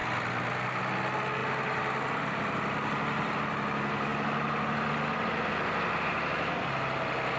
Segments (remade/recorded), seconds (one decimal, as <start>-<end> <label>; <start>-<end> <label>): 0.0-7.4 recorded